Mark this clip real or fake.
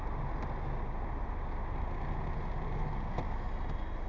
real